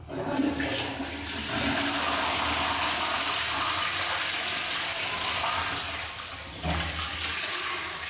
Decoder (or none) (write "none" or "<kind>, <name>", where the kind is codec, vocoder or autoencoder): none